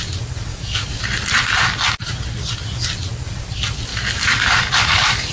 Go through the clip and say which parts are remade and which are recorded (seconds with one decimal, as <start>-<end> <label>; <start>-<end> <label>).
0.0-0.5 recorded; 0.5-1.0 remade; 1.0-3.9 recorded; 3.9-5.3 remade